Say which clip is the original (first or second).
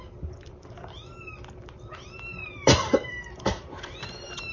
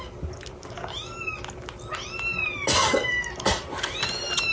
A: second